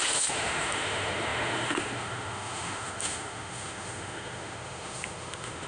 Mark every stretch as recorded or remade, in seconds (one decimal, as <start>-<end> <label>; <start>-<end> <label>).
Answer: 0.0-5.7 remade